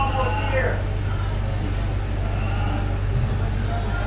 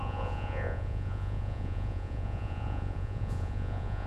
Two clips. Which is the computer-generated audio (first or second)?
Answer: second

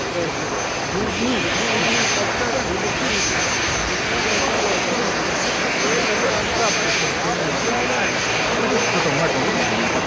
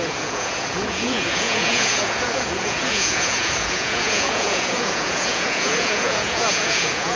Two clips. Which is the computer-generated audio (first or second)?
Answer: second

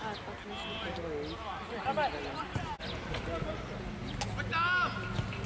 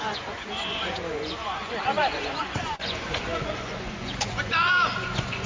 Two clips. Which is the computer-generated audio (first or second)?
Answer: second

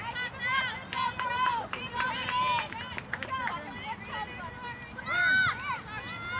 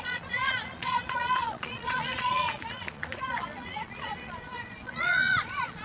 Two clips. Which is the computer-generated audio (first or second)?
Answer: second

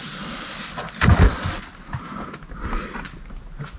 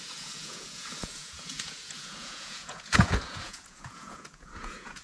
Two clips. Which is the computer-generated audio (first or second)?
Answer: second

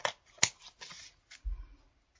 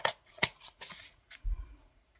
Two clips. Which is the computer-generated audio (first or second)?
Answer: second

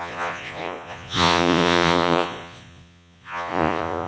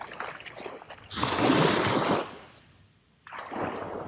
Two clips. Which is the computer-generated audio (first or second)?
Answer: first